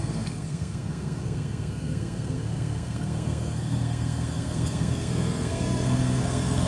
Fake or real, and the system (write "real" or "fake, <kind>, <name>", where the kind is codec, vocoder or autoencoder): fake, codec, SNAC